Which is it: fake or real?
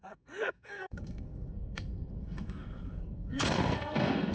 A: fake